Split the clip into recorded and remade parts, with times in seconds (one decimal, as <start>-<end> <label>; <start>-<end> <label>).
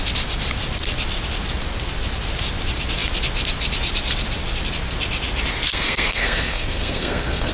0.0-5.7 recorded; 5.7-7.5 remade